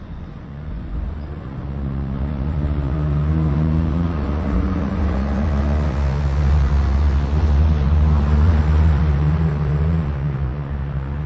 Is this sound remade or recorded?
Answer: remade